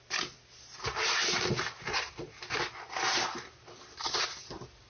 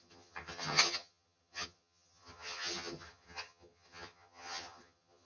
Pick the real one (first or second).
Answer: first